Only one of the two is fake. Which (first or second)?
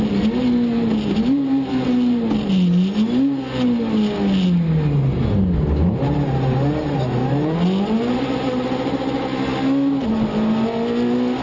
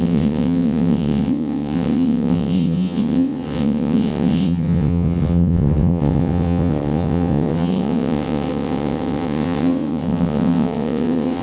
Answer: second